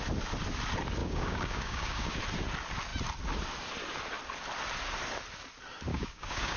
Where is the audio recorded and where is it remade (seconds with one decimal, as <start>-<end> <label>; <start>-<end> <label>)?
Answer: 0.0-1.0 recorded; 1.0-2.2 remade; 2.2-5.9 recorded; 5.9-6.6 remade